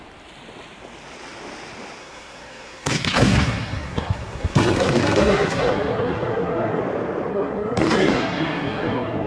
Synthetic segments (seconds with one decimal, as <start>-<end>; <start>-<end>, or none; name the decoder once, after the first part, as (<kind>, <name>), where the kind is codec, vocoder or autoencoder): 2.0-6.8 (codec, SNAC); 7.3-9.3